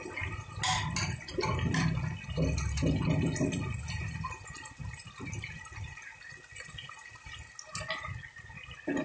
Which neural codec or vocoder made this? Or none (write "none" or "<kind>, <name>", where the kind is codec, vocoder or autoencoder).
none